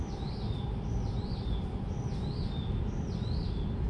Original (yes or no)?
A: yes